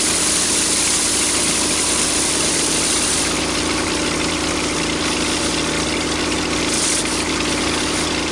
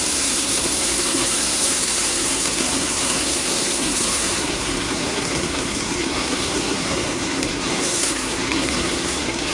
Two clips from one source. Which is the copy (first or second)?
second